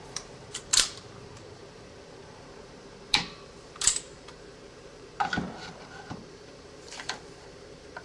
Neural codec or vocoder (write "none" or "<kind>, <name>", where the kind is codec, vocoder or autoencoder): vocoder, BigVGAN v2